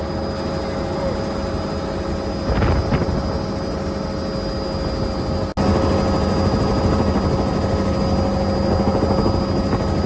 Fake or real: real